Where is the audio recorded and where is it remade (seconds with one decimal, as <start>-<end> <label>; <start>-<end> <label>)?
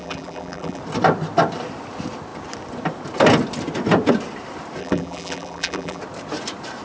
0.0-0.8 remade; 0.8-4.8 recorded; 4.8-6.0 remade; 6.0-6.8 recorded